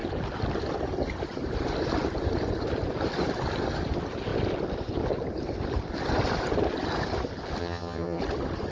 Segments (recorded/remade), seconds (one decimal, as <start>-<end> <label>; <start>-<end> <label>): 0.0-7.6 recorded; 7.6-8.2 remade; 8.2-8.7 recorded